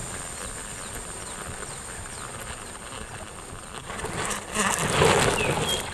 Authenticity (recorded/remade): recorded